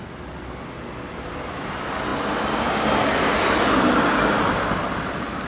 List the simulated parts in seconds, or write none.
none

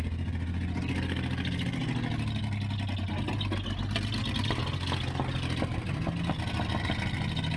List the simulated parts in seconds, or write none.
none

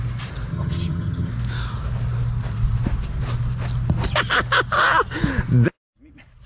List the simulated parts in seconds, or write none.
0.5-1.3 (vocoder, HiFi-GAN)